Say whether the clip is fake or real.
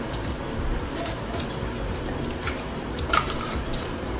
fake